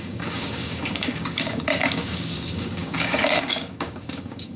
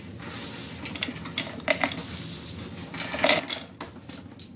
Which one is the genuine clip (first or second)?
second